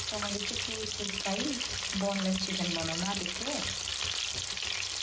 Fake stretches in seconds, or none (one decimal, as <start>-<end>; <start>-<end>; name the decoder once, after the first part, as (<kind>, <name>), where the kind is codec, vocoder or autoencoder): none